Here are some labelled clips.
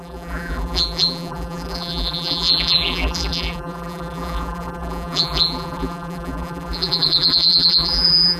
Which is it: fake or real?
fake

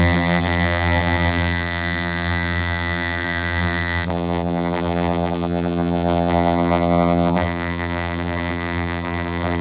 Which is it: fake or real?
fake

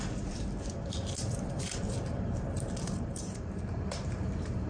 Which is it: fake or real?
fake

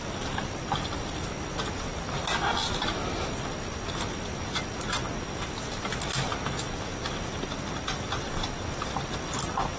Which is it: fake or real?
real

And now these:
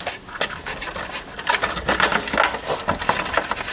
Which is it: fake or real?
real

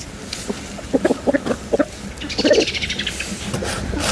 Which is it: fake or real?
real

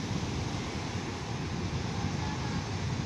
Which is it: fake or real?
real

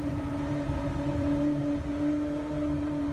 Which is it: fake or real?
fake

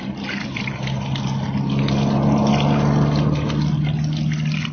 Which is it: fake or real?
real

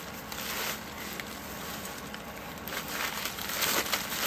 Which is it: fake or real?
real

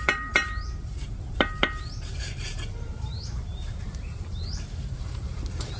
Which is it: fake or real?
fake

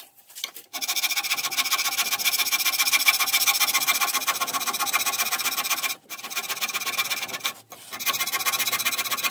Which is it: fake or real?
real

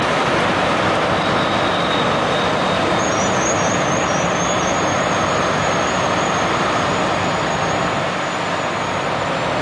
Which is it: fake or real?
real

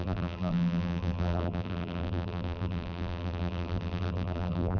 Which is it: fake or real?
fake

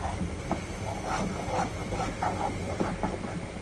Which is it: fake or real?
real